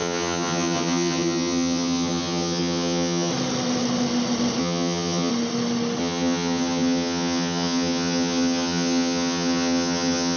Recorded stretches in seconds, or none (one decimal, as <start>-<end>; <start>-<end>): 3.3-4.6; 5.3-6.0